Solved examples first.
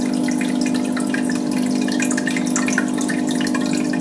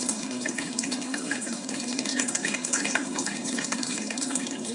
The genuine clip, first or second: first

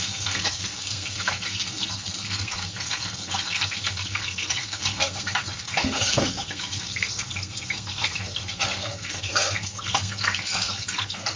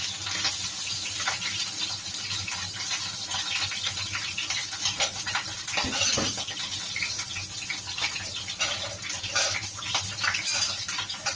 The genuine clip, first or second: second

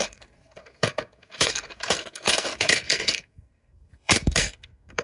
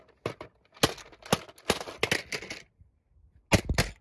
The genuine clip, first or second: second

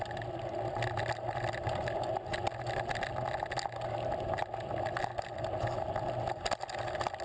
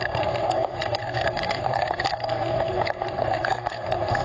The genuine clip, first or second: first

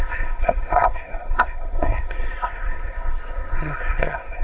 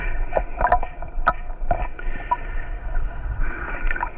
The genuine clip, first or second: second